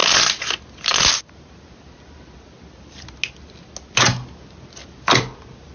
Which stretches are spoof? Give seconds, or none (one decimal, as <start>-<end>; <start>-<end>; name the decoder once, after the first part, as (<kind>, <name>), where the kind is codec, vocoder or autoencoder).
none